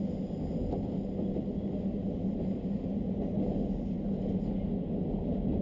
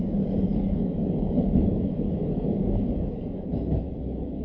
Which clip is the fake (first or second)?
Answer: second